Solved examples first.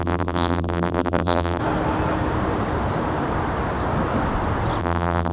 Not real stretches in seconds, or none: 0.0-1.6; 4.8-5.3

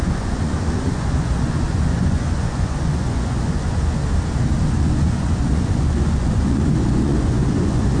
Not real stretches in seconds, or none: 0.0-4.0; 4.8-8.0

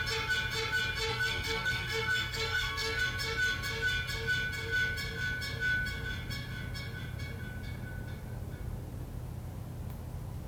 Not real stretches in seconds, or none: 1.1-3.0

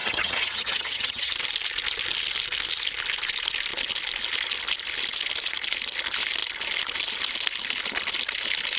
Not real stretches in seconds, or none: 0.0-1.3